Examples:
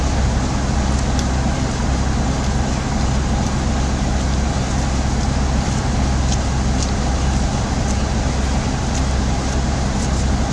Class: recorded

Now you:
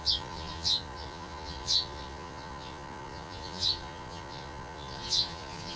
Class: remade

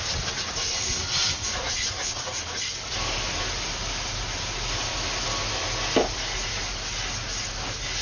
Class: recorded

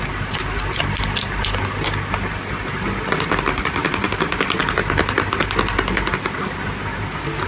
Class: recorded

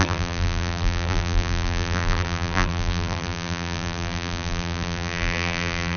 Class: remade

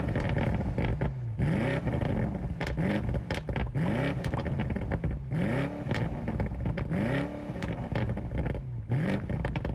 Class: recorded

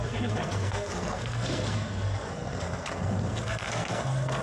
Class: remade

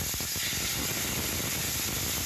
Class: recorded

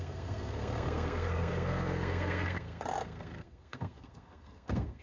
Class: remade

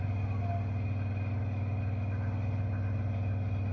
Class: recorded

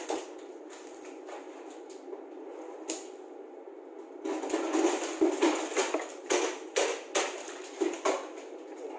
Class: recorded